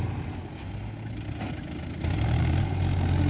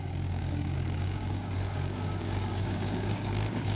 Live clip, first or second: first